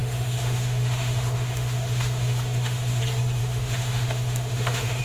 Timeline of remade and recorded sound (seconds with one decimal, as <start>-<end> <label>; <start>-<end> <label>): 0.0-3.0 remade; 3.0-3.4 recorded; 3.4-5.0 remade

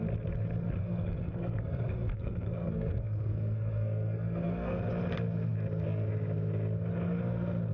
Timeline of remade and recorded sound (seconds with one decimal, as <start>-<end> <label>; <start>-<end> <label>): 0.0-0.8 recorded; 0.8-4.9 remade; 4.9-7.7 recorded